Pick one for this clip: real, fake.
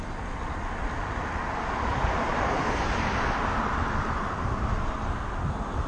real